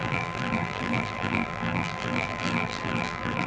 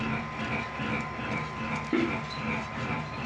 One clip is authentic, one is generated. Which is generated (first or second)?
first